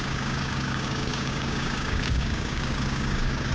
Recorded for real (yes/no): no